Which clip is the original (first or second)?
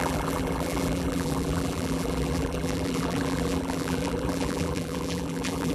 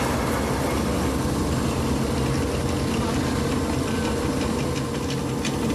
second